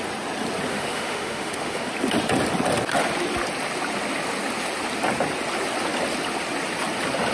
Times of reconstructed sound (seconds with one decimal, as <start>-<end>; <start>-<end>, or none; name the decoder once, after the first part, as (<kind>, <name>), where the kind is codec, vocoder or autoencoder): 0.7-1.9 (autoencoder, DAC-VAE)